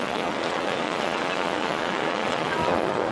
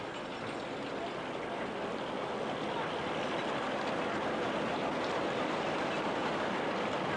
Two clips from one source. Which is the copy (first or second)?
first